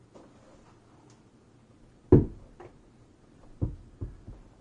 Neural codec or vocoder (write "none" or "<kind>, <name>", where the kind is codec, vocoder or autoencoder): none